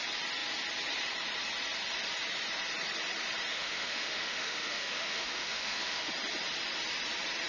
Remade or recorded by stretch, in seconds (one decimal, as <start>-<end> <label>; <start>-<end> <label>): 0.0-3.5 recorded; 3.5-6.1 remade; 6.1-7.5 recorded